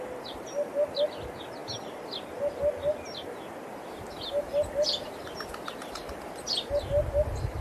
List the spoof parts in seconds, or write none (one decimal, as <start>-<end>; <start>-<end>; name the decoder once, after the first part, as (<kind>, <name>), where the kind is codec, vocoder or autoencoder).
none